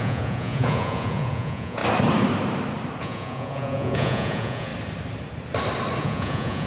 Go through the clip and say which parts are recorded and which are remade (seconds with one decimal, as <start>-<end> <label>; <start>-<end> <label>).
0.0-1.8 remade; 1.8-3.0 recorded; 3.0-4.7 remade; 4.7-6.0 recorded; 6.0-6.7 remade